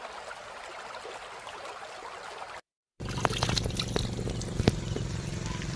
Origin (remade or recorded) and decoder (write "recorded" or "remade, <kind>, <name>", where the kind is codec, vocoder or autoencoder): recorded